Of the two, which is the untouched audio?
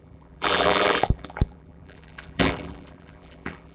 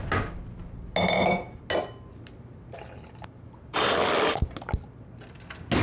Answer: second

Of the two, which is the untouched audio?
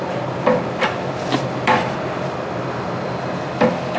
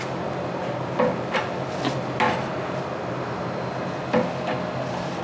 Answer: second